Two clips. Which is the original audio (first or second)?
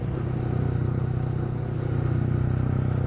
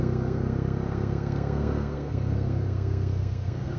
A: first